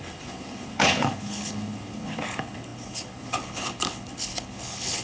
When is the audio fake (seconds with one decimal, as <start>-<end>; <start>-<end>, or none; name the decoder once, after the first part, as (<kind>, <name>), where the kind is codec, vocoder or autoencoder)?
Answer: 0.0-5.0 (codec, HILCodec)